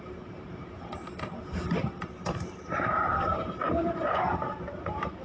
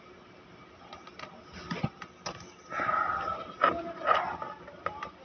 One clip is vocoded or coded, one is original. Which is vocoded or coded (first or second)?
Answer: first